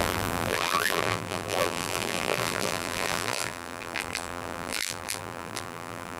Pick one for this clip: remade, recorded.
remade